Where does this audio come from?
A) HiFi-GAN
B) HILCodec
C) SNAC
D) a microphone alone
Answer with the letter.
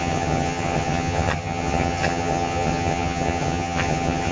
A